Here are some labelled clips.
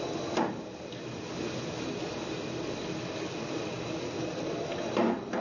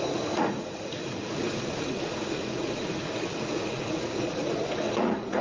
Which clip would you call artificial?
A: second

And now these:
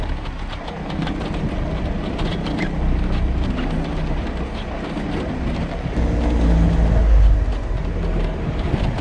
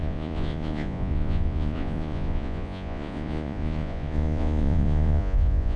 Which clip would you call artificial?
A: second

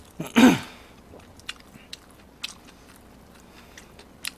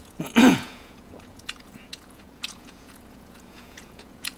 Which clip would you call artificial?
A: second